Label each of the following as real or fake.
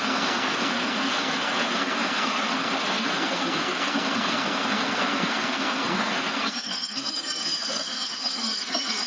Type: fake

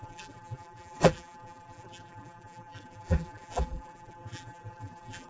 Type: fake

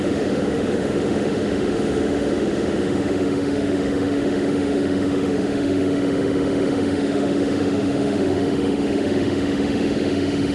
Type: fake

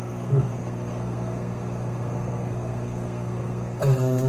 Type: fake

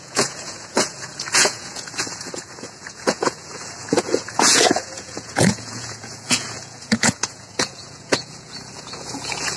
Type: fake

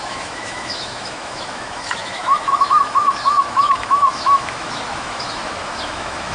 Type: fake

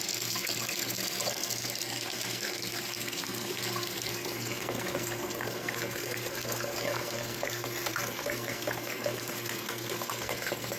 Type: fake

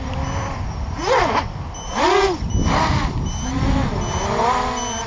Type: real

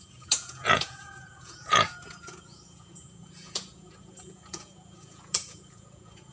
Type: fake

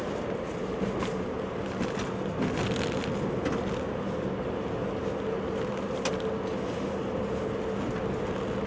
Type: real